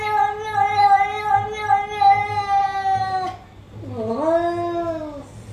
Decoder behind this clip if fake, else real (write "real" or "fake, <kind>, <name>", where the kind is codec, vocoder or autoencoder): real